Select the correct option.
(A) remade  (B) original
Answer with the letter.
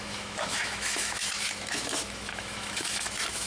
A